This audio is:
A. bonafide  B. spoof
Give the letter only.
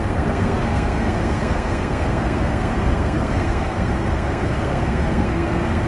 B